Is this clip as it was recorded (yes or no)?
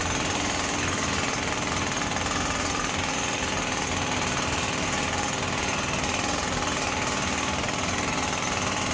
yes